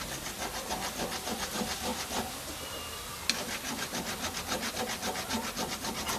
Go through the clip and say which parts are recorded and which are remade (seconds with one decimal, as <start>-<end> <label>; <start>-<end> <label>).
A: 0.0-6.2 recorded